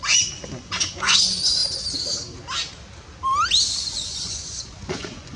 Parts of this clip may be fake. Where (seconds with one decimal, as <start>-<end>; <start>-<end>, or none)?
0.6-1.6; 3.7-5.4